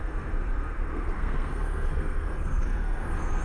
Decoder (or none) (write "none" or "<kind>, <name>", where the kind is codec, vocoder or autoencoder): codec, SNAC